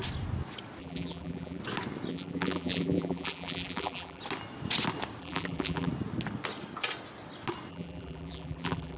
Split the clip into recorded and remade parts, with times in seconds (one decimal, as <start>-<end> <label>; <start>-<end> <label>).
0.0-0.8 recorded; 0.8-1.6 remade; 1.6-2.1 recorded; 2.1-4.2 remade; 4.2-5.2 recorded; 5.2-5.9 remade; 5.9-7.7 recorded; 7.7-9.0 remade